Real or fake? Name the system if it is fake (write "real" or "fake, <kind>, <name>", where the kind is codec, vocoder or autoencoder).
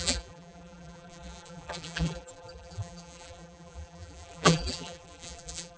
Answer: fake, vocoder, BigVGAN v2